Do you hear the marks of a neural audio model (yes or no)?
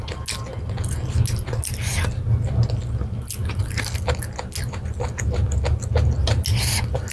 no